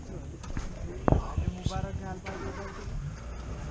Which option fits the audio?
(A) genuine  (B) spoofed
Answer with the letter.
A